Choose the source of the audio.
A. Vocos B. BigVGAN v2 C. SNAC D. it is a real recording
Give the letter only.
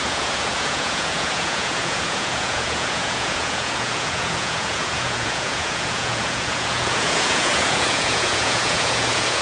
A